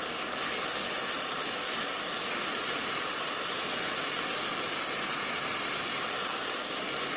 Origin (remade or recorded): recorded